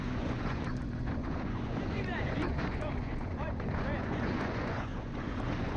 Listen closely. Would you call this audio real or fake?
fake